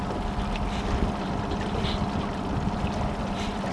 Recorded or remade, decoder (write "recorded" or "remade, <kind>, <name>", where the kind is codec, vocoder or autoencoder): recorded